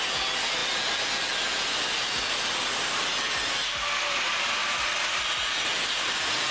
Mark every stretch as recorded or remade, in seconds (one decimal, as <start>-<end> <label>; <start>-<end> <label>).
0.0-6.5 recorded